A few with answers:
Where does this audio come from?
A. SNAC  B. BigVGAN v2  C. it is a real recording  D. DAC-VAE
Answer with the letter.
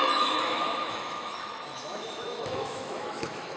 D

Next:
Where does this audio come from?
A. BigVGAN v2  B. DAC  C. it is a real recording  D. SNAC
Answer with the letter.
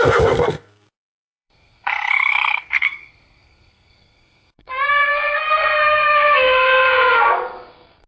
D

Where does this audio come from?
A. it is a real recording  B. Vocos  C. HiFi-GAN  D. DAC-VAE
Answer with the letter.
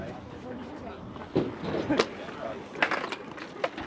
A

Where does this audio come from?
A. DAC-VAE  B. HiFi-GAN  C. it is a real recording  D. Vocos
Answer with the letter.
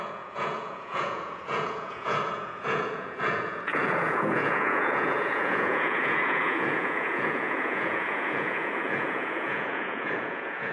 D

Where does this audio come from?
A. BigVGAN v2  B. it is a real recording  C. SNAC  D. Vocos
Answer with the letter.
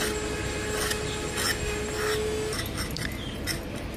B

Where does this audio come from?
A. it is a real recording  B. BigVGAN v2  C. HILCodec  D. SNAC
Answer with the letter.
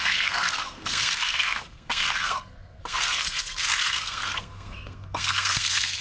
D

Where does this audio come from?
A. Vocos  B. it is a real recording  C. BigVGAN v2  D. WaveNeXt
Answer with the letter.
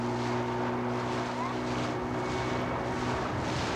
B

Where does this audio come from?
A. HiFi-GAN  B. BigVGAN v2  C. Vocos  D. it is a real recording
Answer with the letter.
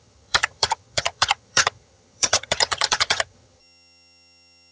A